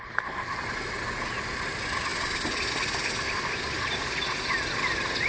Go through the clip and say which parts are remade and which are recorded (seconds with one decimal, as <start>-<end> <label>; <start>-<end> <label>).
0.0-5.3 recorded